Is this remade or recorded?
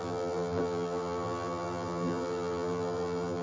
remade